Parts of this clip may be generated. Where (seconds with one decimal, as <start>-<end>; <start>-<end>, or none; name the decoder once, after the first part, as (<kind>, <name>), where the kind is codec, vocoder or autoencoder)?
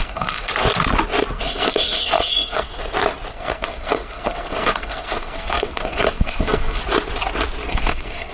0.0-0.5 (codec, SNAC); 1.3-2.7; 3.3-6.8; 7.7-8.3